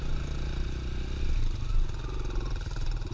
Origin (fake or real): real